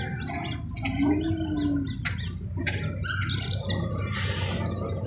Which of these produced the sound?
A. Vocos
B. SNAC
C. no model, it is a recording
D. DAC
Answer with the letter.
C